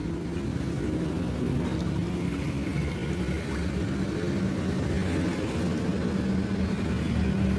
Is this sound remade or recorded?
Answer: recorded